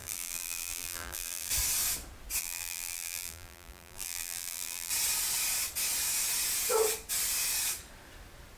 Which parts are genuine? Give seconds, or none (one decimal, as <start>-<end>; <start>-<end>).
1.5-2.4; 4.9-8.6